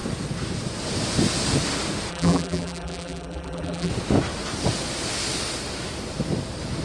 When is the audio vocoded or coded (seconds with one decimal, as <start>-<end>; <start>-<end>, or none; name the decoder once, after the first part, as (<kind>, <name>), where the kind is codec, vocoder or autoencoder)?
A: 2.1-3.9 (vocoder, BigVGAN v2)

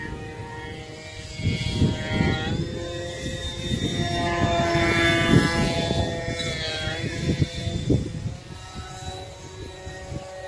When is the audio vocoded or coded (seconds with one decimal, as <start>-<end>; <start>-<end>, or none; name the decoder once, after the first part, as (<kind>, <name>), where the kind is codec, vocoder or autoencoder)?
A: none

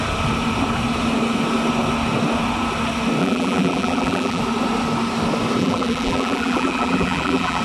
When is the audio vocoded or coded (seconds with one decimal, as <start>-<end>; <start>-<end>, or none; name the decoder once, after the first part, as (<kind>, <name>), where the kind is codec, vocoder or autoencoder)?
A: 3.2-4.4 (vocoder, BigVGAN v2); 5.6-7.6

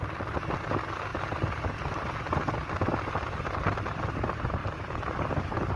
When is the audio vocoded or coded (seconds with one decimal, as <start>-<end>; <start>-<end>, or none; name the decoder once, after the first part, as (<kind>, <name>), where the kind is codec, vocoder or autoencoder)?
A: none

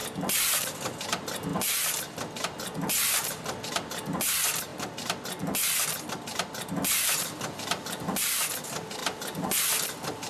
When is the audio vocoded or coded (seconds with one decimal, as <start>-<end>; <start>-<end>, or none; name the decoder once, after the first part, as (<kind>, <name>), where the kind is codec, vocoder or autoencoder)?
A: none

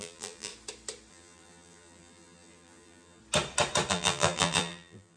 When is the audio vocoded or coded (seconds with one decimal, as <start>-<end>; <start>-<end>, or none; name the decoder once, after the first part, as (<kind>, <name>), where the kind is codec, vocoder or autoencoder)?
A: 0.0-0.5 (vocoder, BigVGAN v2); 1.1-3.2; 3.9-5.2

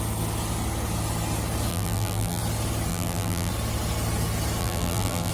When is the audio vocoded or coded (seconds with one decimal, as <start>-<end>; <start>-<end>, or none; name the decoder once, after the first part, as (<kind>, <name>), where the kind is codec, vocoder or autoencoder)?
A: 1.7-2.4 (vocoder, BigVGAN v2); 2.9-3.5; 4.6-5.3

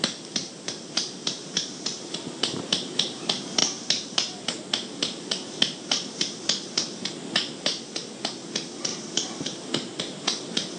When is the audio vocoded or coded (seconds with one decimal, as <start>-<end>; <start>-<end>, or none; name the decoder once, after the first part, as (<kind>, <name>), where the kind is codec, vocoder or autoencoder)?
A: 0.4-3.2 (vocoder, BigVGAN v2); 3.6-4.6; 8.9-10.0